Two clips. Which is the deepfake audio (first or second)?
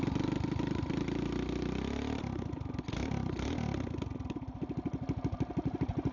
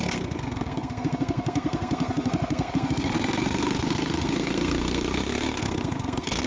second